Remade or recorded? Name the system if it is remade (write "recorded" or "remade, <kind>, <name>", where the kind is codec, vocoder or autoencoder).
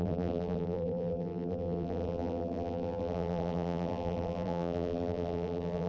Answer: remade, vocoder, BigVGAN v2